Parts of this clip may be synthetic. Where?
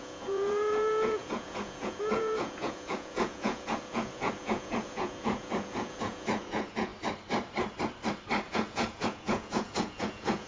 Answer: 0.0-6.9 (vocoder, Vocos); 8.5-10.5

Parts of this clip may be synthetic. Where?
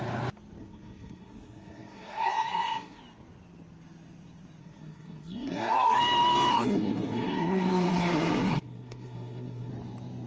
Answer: 0.6-3.0 (codec, SNAC); 4.6-6.0; 6.5-9.7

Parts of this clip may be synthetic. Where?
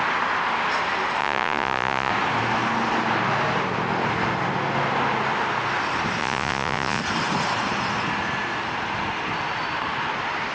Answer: 1.2-2.1 (vocoder, Vocos); 6.2-7.0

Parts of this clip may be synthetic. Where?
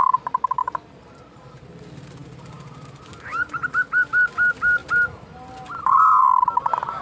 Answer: none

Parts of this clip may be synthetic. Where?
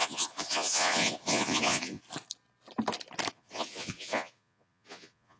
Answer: 0.0-2.0 (vocoder, Vocos); 3.3-5.4